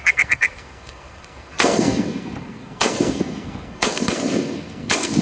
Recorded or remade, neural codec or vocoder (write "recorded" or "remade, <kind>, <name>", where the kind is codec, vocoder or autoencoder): remade, codec, SNAC